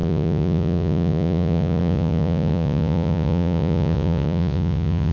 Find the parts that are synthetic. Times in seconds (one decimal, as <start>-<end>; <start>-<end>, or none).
0.0-5.1